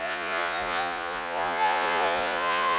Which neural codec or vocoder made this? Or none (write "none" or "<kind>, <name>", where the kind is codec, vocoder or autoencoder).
vocoder, Vocos